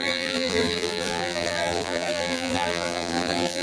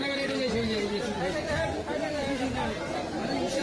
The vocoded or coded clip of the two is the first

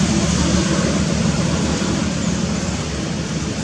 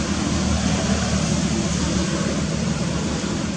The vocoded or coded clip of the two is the first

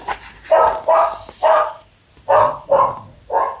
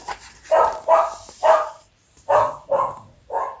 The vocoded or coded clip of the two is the second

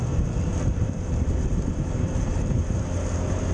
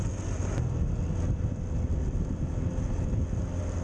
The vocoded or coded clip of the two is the first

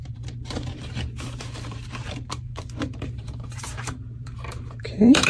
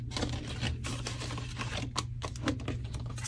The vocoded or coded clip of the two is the first